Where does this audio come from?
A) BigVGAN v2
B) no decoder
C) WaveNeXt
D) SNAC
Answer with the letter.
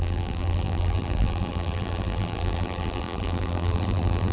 A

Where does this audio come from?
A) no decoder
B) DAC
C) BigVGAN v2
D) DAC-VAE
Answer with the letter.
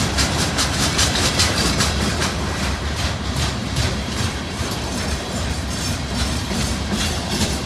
C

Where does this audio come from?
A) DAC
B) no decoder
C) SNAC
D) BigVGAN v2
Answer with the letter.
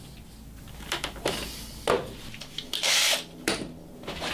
B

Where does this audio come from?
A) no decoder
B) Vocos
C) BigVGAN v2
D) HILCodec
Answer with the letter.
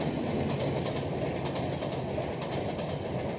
C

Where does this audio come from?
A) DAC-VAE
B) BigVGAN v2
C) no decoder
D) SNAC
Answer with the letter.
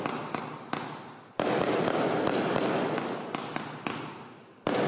C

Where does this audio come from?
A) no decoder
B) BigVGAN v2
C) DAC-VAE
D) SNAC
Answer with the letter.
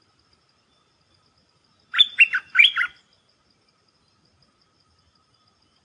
B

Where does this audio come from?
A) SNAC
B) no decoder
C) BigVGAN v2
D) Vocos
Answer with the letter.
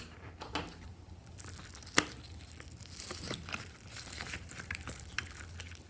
B